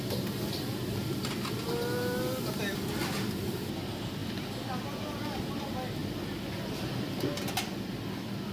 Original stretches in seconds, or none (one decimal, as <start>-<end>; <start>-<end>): 0.0-8.5